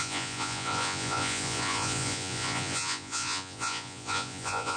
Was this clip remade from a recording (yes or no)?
yes